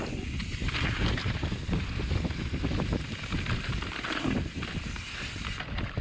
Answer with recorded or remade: recorded